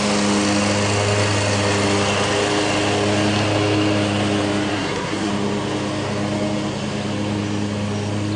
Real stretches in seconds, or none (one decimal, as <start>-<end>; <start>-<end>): 0.0-4.7; 5.3-8.4